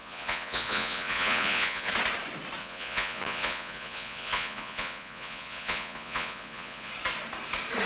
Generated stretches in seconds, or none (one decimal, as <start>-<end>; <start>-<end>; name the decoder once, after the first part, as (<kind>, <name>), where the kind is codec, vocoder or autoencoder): 0.0-1.9 (vocoder, Vocos); 2.6-6.9